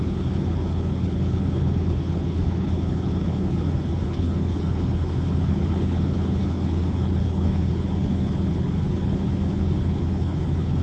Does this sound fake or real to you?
fake